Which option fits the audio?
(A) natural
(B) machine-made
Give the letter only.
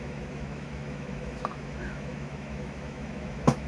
B